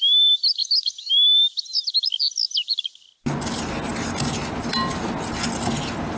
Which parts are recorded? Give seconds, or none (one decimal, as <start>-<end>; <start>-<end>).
0.0-0.6; 1.1-6.2